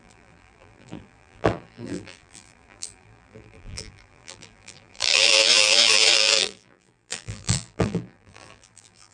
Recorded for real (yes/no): no